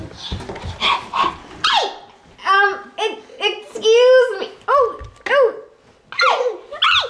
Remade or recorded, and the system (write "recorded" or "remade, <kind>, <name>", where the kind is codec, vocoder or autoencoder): recorded